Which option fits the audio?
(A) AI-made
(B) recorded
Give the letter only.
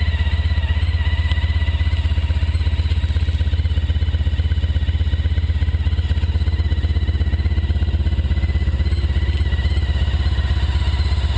B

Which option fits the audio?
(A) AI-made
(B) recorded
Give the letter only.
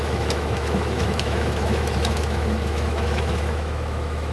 A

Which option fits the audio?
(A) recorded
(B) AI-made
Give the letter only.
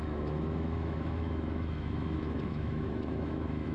B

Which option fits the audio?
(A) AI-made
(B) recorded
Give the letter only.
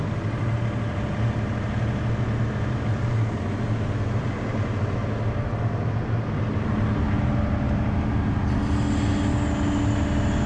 B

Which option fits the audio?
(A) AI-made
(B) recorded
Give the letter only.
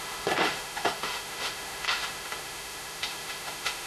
A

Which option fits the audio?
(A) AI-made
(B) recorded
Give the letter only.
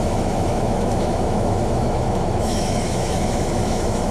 A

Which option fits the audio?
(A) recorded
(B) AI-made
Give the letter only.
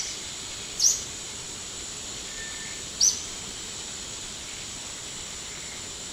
A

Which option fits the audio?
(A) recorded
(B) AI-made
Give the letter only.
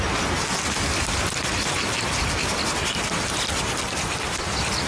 A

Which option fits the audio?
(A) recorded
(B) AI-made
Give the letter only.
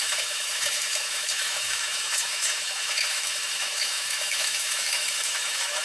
B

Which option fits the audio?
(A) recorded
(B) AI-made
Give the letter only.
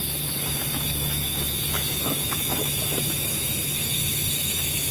B